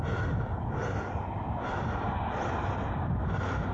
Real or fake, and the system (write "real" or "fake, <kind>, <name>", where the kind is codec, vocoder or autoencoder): real